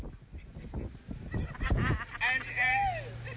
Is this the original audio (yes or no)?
yes